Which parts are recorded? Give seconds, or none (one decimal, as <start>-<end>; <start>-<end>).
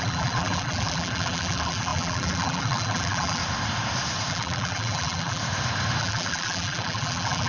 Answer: 3.4-4.3; 5.4-6.0